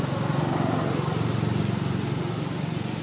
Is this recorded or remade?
recorded